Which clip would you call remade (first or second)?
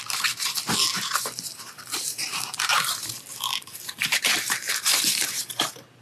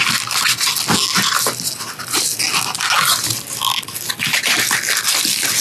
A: first